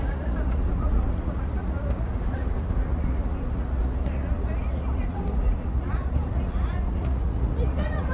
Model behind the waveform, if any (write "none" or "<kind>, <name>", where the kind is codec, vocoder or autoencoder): vocoder, Vocos